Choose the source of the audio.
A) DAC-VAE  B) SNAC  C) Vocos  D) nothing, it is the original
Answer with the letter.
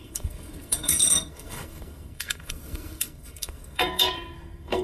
B